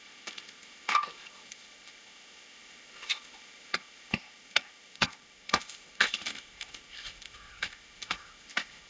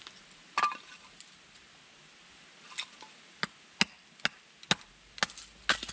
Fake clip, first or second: first